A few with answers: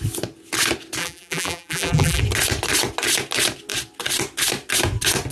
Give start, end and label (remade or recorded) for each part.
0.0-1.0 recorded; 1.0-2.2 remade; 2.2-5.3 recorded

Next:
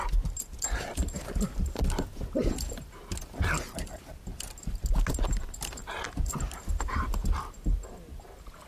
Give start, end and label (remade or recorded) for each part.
0.0-8.7 recorded

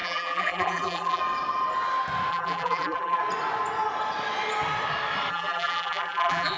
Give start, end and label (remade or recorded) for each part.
0.0-1.2 remade; 1.2-2.3 recorded; 2.3-3.2 remade; 3.2-5.3 recorded; 5.3-6.6 remade

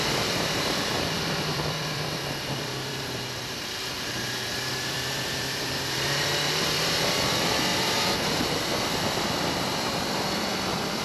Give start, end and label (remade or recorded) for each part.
0.0-7.7 remade; 7.7-8.5 recorded; 8.5-11.0 remade

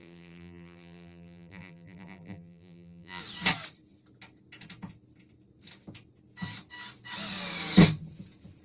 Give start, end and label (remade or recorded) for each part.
0.0-3.2 remade; 3.2-8.6 recorded